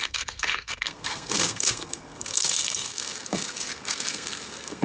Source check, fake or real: fake